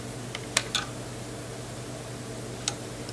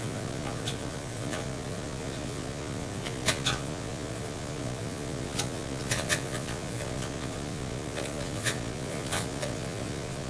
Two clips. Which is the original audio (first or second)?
first